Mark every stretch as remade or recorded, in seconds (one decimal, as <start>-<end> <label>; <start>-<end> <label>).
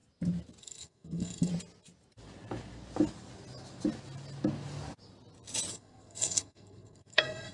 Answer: 0.0-0.6 recorded; 0.6-1.5 remade; 1.5-5.7 recorded; 5.7-7.5 remade